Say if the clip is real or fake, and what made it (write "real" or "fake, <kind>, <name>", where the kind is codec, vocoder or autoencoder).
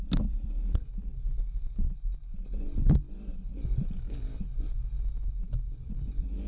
real